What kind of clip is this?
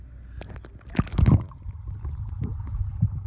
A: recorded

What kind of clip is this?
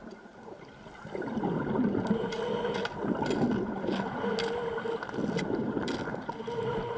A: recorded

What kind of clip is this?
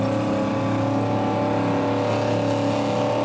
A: recorded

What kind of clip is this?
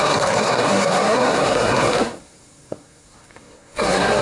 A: remade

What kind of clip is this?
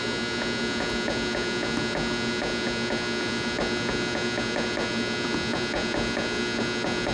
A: recorded